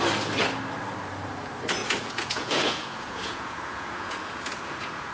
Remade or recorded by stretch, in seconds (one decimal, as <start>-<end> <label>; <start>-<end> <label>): 0.0-1.8 recorded; 1.8-5.1 remade

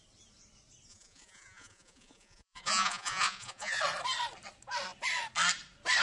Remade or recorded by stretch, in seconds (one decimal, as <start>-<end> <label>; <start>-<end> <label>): 0.0-0.9 recorded; 0.9-3.8 remade; 3.8-6.0 recorded

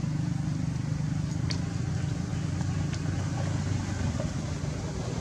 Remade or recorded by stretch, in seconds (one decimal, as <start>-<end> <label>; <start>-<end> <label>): 0.0-5.2 recorded

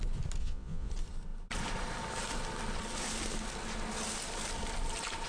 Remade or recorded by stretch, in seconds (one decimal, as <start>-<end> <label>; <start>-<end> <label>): 0.0-0.4 recorded; 0.4-0.9 remade; 0.9-5.3 recorded

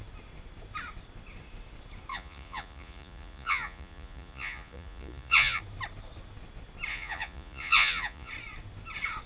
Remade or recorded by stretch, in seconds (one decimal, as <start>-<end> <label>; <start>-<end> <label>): 0.0-2.1 recorded; 2.1-5.6 remade; 5.6-6.9 recorded; 6.9-8.3 remade; 8.3-9.3 recorded

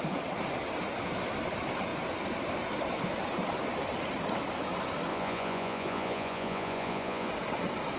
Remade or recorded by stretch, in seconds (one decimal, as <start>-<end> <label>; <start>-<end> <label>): 0.0-5.1 recorded; 5.1-7.3 remade; 7.3-8.0 recorded